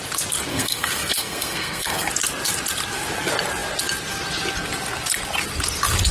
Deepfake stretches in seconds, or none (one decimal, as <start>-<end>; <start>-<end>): 0.5-2.1